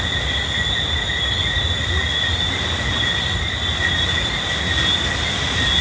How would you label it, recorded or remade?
recorded